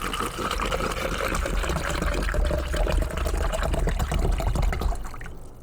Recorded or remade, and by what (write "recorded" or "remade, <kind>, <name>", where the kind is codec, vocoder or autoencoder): recorded